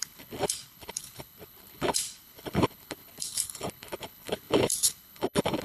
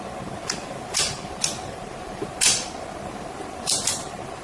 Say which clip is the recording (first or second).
second